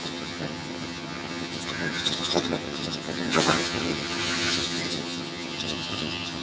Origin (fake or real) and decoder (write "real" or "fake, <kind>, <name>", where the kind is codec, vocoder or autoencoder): fake, vocoder, HiFi-GAN